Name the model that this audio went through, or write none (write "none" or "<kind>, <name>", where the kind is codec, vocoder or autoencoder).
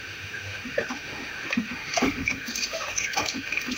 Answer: autoencoder, DAC-VAE